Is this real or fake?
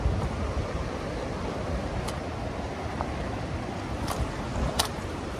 real